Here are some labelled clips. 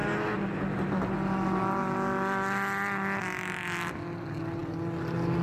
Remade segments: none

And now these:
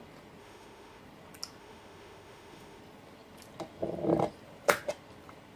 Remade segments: 0.4-1.0 (autoencoder, DAC-VAE); 1.6-2.8

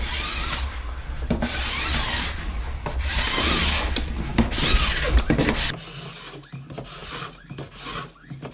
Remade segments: none

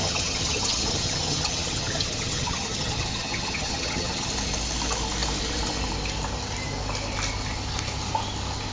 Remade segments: 0.0-4.3 (vocoder, HiFi-GAN)

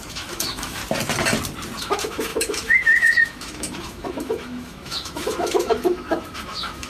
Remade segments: 0.0-0.8 (autoencoder, DAC-VAE); 1.8-6.9

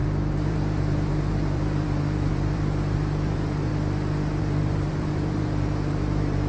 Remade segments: 0.0-3.7 (vocoder, BigVGAN v2); 4.4-6.5

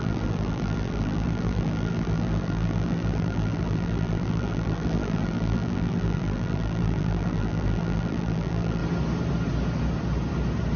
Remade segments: 0.0-8.8 (vocoder, BigVGAN v2)

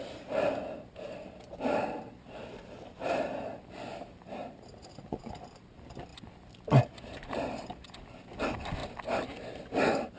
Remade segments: 4.4-5.2 (vocoder, Vocos)